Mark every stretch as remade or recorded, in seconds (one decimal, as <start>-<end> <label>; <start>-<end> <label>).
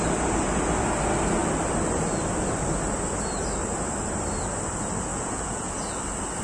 0.0-5.1 recorded; 5.1-5.7 remade; 5.7-6.4 recorded